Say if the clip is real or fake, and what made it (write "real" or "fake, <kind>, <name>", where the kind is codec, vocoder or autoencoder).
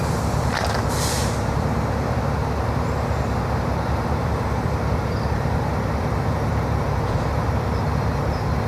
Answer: fake, vocoder, BigVGAN v2